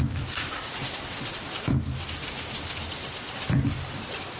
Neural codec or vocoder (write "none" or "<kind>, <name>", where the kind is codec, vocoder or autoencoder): vocoder, BigVGAN v2